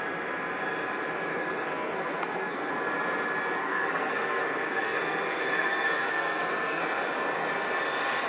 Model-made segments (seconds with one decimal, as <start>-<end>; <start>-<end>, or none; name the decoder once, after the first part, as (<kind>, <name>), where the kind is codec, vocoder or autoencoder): 1.3-2.7 (codec, SNAC); 3.6-6.8